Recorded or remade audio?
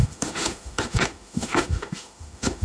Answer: remade